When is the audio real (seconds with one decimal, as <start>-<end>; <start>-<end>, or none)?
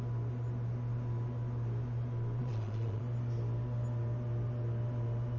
0.0-2.4; 3.0-5.4